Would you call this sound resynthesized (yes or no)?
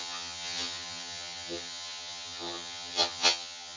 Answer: yes